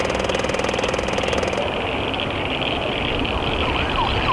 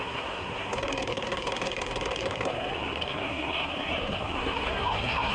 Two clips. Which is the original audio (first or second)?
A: first